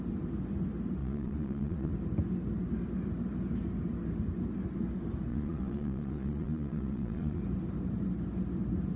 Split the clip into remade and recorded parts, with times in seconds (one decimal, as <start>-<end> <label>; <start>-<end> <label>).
0.0-1.0 recorded; 1.0-1.9 remade; 1.9-5.3 recorded; 5.3-7.4 remade; 7.4-9.0 recorded